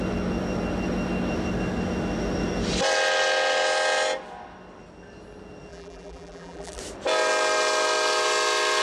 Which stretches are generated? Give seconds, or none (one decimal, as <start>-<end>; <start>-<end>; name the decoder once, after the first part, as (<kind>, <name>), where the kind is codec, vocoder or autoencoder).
5.7-6.8 (vocoder, BigVGAN v2)